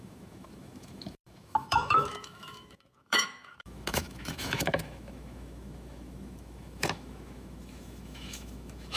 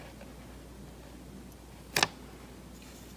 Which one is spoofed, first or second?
first